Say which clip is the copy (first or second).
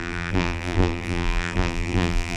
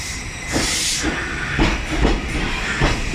first